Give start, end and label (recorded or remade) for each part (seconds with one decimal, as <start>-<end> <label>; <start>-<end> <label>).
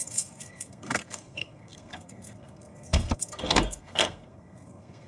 0.0-5.1 remade